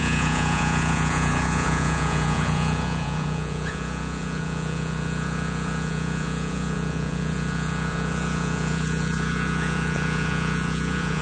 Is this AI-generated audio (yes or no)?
yes